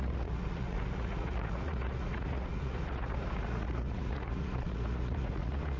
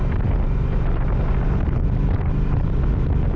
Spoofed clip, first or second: first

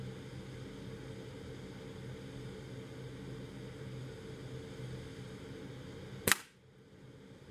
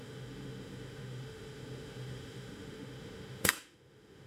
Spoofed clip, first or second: second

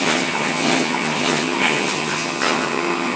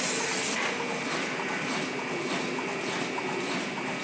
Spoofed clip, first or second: first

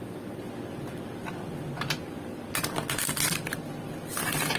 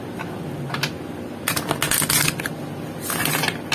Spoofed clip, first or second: first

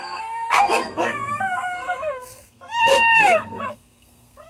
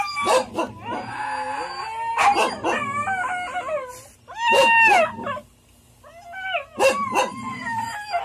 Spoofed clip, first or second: first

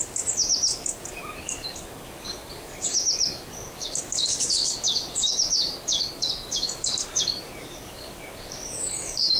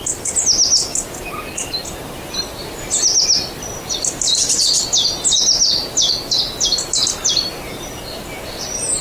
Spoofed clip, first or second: first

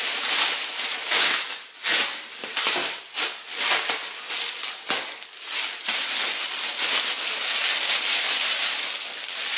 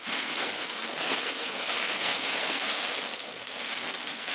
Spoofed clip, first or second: second